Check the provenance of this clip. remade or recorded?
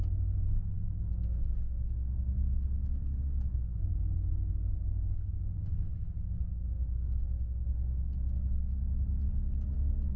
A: recorded